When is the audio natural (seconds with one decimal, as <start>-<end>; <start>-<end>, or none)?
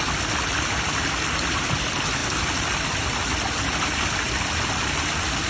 0.0-5.5